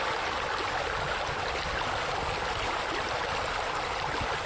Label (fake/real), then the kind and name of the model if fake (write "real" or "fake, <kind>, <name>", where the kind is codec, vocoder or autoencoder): real